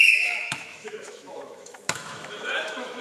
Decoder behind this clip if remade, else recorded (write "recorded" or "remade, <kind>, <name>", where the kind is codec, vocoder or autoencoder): remade, autoencoder, DAC-VAE